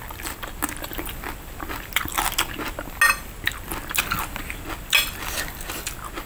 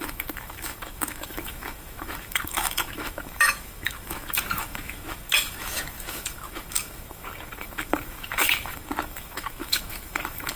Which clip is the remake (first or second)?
second